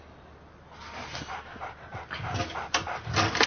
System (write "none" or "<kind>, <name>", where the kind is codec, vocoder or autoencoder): none